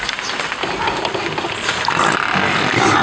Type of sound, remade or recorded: recorded